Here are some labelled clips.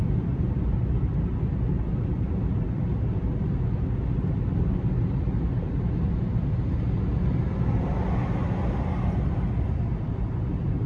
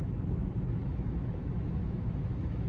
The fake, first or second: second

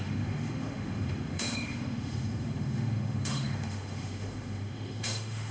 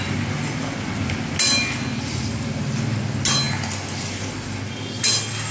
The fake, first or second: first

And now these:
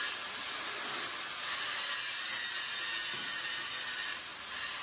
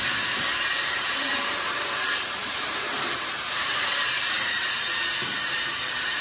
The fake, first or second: second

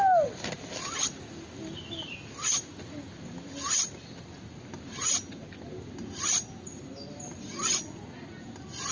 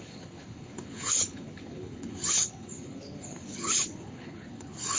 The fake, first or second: second